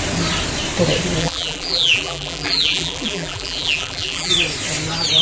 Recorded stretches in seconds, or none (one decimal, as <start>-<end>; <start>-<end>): 0.0-1.2; 4.3-5.2